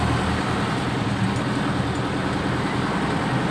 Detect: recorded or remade recorded